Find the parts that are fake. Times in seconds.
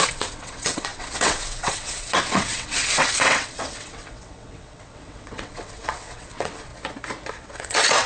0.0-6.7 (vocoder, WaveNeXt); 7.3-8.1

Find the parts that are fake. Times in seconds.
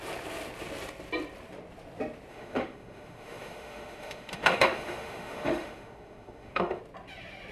2.3-6.8 (autoencoder, DAC-VAE)